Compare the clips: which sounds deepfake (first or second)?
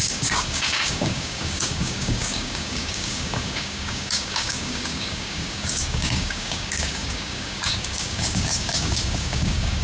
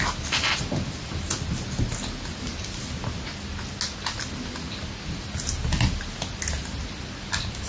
first